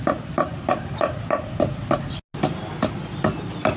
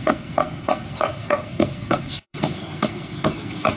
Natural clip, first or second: first